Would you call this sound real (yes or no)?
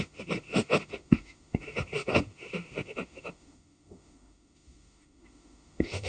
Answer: no